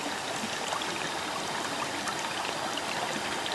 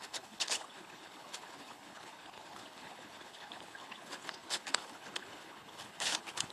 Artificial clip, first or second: second